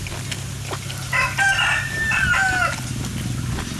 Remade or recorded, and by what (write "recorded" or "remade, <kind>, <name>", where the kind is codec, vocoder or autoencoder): recorded